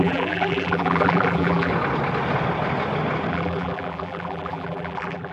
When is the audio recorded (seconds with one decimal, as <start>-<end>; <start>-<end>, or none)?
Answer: 1.7-3.3